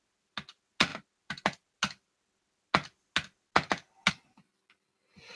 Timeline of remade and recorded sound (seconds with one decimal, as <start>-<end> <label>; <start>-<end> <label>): 0.0-5.4 recorded